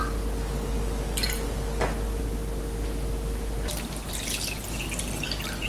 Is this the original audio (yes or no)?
yes